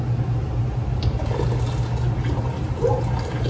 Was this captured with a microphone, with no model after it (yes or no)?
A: yes